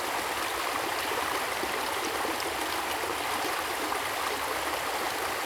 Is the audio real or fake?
real